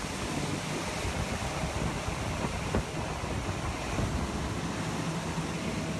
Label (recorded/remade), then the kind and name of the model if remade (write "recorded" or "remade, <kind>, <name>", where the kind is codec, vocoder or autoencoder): recorded